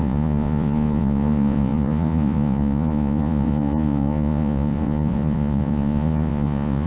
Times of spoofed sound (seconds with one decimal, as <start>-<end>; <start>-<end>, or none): 0.0-6.9